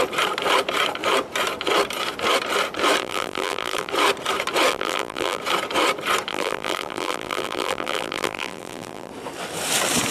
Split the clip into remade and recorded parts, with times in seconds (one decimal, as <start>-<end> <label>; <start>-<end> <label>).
0.0-3.0 recorded; 3.0-3.9 remade; 3.9-4.7 recorded; 4.7-5.4 remade; 5.4-6.3 recorded; 6.3-9.1 remade; 9.1-10.1 recorded